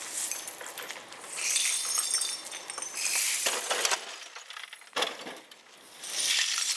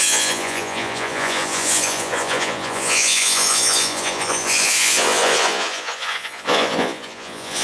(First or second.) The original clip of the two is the first